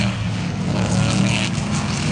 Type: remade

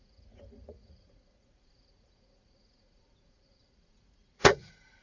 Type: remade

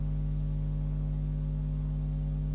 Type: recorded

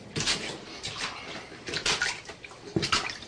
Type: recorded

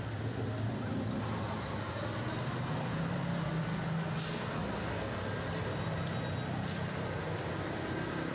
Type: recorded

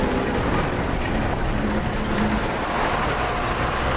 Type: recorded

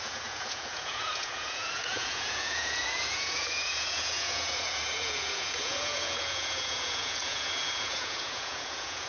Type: remade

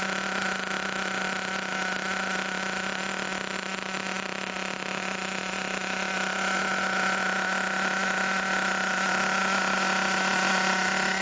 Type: recorded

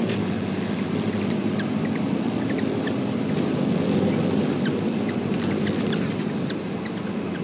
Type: recorded